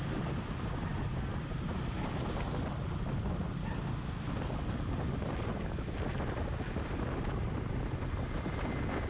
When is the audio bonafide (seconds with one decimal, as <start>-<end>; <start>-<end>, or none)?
0.0-9.1